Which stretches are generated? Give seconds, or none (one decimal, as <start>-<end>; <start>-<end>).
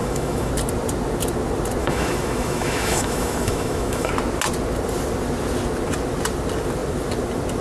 0.0-0.5; 1.8-4.1